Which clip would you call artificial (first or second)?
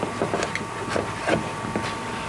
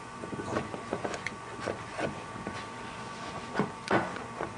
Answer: second